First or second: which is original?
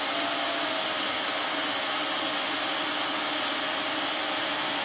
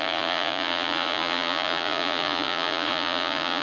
first